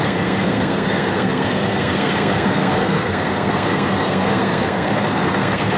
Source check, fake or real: fake